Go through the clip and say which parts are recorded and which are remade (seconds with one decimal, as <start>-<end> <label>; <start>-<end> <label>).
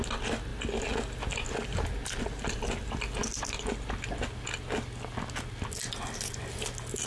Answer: 0.0-7.1 recorded